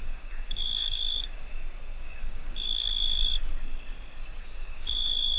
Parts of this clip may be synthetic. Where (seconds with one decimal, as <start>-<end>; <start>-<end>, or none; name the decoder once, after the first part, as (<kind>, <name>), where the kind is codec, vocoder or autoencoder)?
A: 0.0-1.4 (codec, DAC); 2.0-3.3; 4.4-5.4